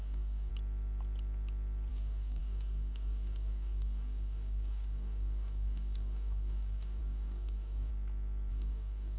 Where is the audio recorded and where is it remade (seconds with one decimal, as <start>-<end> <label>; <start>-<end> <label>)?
0.0-0.5 remade; 0.5-1.9 recorded; 1.9-7.9 remade; 7.9-8.5 recorded; 8.5-9.2 remade